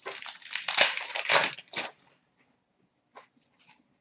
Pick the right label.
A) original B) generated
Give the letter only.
A